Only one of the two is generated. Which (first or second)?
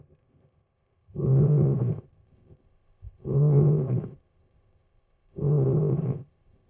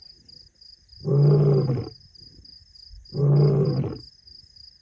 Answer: first